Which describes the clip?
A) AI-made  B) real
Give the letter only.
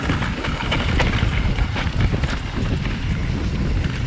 B